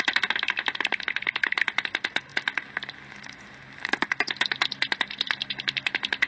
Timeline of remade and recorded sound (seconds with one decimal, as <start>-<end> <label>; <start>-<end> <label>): 0.0-6.3 recorded